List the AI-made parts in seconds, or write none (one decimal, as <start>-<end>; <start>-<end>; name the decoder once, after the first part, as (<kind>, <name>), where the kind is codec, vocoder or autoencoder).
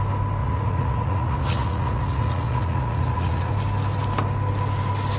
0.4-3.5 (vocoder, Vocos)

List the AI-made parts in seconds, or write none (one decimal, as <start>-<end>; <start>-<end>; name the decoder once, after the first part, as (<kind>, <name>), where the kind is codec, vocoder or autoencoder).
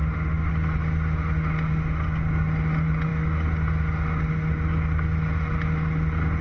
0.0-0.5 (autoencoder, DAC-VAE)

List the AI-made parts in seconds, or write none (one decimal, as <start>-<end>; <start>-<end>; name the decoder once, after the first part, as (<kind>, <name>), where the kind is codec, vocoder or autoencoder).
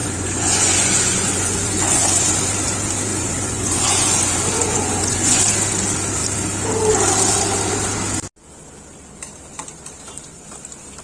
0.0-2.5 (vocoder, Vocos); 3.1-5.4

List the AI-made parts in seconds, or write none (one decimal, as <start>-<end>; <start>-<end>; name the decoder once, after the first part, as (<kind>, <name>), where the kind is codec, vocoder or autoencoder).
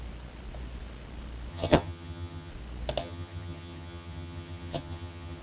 1.5-2.5 (vocoder, HiFi-GAN); 3.0-5.4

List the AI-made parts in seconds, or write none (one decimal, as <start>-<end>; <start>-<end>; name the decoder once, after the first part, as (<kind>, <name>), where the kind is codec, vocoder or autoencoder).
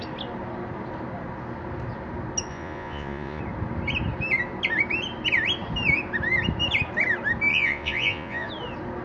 2.5-3.4 (vocoder, Vocos); 7.5-8.5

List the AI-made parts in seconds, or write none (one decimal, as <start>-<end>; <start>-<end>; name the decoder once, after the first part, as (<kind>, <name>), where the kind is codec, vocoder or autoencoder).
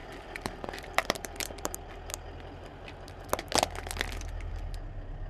0.0-1.9 (vocoder, BigVGAN v2)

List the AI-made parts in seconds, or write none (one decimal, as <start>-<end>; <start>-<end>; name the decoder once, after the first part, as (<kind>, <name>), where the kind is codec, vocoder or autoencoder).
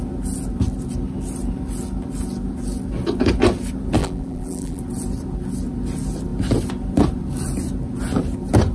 4.0-4.8 (vocoder, BigVGAN v2)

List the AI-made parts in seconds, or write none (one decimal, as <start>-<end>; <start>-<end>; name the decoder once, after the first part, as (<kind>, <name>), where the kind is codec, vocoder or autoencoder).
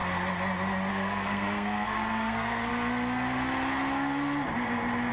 0.9-2.7 (codec, SNAC)